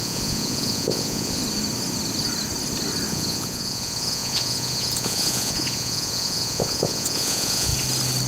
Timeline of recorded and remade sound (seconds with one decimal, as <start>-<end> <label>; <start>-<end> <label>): 0.0-1.4 remade; 1.4-3.1 recorded; 3.1-7.7 remade; 7.7-8.3 recorded